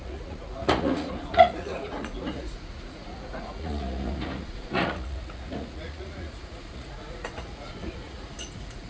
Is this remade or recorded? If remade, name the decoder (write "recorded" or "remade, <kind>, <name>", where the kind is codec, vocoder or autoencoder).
remade, vocoder, Vocos